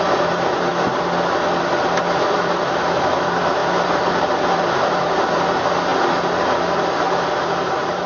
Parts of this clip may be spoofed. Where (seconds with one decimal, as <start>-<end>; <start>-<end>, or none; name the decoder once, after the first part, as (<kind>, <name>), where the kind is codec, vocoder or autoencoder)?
0.0-0.7 (vocoder, BigVGAN v2); 2.4-5.9; 7.6-8.1